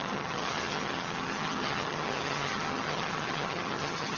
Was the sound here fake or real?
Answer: fake